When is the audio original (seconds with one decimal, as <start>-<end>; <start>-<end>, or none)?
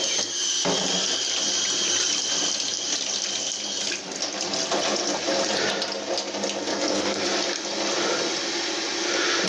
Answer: 0.0-6.7; 7.2-9.5